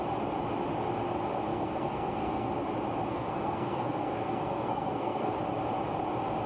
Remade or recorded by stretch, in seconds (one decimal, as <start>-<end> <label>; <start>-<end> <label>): 0.0-1.5 recorded; 1.5-2.5 remade; 2.5-3.1 recorded; 3.1-5.3 remade; 5.3-6.5 recorded